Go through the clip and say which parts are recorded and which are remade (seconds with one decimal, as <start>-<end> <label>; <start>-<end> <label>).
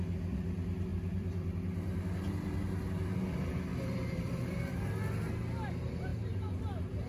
0.0-0.9 recorded; 0.9-2.3 remade; 2.3-3.7 recorded; 3.7-4.6 remade; 4.6-6.1 recorded; 6.1-6.6 remade; 6.6-7.1 recorded